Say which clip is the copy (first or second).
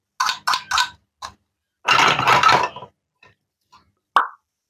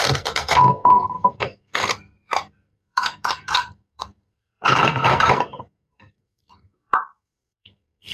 second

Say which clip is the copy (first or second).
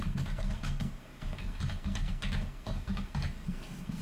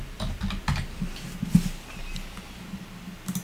first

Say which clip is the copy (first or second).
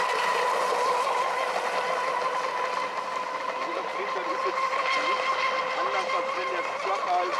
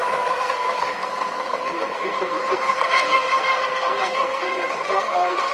second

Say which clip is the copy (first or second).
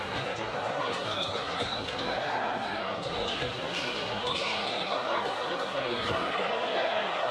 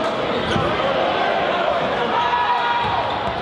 first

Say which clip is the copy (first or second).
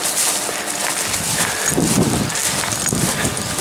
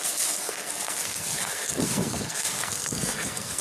second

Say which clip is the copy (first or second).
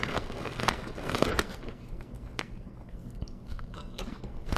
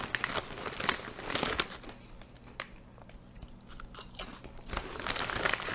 first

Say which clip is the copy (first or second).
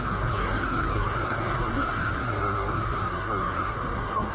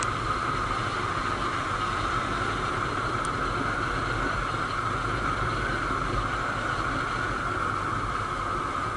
first